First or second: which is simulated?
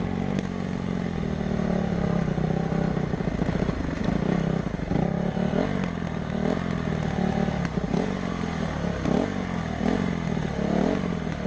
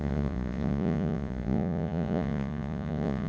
second